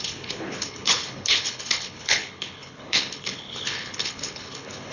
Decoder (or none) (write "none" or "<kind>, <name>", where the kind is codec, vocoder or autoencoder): codec, HILCodec